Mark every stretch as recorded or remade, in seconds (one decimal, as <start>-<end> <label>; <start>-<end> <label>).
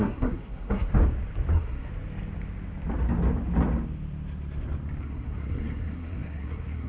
0.0-0.9 remade; 0.9-1.5 recorded; 1.5-1.9 remade; 1.9-5.0 recorded; 5.0-6.9 remade